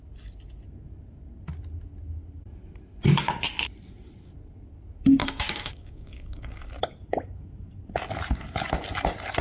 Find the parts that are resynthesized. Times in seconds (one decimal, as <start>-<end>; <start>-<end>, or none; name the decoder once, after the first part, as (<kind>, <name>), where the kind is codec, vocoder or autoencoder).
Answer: 5.2-6.6 (codec, DAC)